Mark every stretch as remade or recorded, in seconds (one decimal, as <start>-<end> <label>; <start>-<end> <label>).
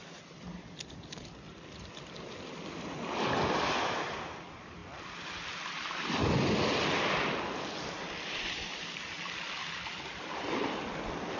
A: 0.0-11.4 recorded